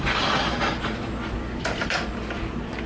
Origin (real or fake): real